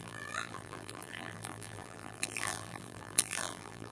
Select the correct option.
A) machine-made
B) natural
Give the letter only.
A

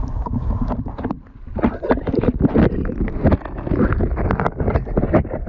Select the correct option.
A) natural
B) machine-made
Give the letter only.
A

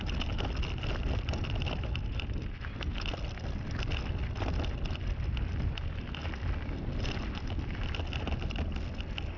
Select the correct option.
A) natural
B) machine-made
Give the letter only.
A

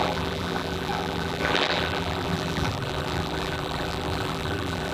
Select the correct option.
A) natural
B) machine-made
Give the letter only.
B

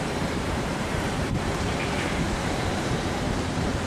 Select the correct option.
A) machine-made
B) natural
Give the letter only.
A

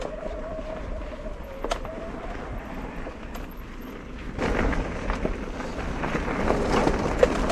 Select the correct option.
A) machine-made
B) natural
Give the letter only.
B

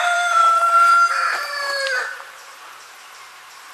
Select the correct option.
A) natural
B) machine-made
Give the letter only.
B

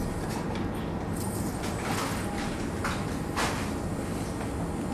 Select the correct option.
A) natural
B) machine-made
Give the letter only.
A